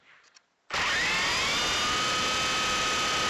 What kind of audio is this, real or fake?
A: real